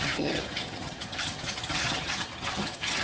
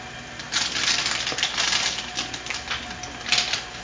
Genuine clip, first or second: second